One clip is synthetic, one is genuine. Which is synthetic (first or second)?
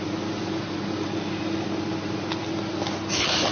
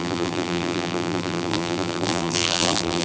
second